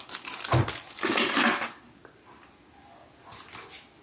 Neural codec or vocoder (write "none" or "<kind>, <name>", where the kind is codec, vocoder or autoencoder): none